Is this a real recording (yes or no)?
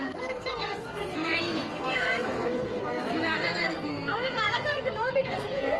no